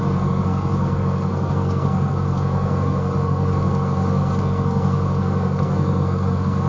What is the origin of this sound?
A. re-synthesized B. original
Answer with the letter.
A